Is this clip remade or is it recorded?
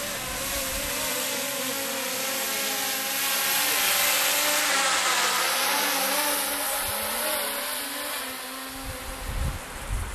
recorded